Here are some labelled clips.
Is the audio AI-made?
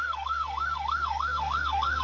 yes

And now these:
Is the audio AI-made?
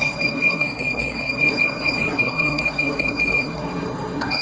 yes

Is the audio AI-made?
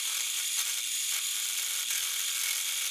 no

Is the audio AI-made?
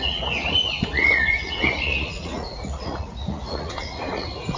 yes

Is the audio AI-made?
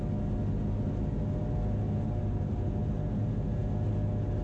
no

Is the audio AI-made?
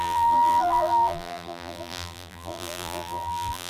yes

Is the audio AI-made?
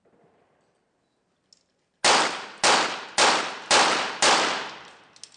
no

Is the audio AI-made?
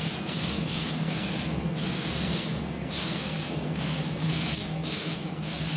yes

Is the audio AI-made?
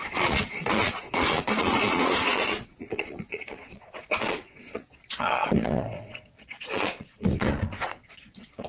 yes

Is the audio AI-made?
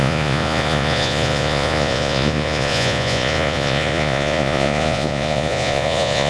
yes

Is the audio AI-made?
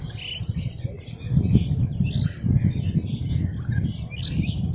no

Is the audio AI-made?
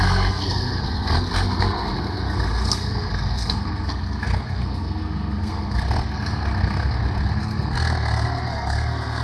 yes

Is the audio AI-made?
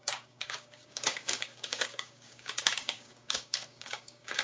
yes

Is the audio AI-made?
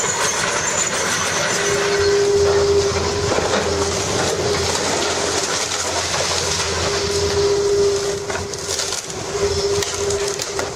no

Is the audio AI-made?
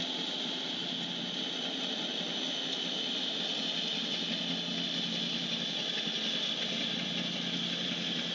no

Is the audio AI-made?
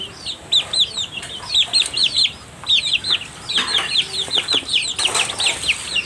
no